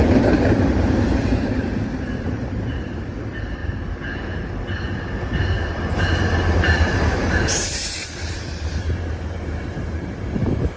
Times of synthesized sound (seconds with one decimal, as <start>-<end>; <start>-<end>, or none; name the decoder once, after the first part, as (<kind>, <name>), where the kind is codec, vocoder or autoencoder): 0.0-3.6 (vocoder, BigVGAN v2); 6.0-10.8

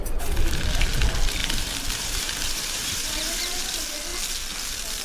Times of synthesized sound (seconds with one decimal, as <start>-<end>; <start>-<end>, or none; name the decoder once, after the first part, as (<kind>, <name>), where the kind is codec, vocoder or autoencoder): 1.4-3.4 (vocoder, BigVGAN v2)

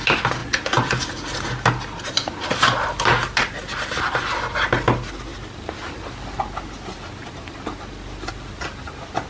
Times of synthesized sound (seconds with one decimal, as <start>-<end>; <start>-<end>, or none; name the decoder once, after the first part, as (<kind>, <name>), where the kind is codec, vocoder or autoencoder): none

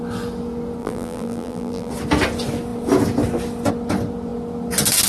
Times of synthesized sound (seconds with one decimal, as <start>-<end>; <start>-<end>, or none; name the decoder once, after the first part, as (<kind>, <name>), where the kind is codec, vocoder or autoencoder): 0.8-1.9 (vocoder, BigVGAN v2)

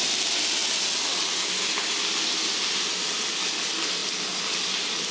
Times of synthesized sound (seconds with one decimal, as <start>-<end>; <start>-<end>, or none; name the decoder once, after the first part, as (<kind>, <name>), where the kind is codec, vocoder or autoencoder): 4.0-5.1 (vocoder, BigVGAN v2)